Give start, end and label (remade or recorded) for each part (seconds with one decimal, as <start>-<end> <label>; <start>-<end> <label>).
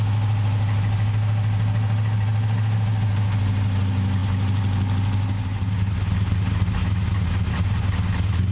0.0-8.5 recorded